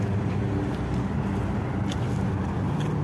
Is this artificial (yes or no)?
no